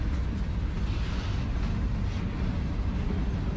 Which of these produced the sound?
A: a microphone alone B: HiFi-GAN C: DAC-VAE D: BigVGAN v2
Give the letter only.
A